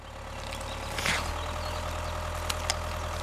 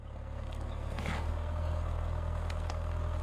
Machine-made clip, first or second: second